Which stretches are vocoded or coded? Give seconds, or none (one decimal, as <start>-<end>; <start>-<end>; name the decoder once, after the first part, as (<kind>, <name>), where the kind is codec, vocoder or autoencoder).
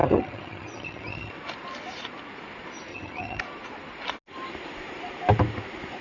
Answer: 0.0-1.3 (vocoder, HiFi-GAN); 2.9-3.4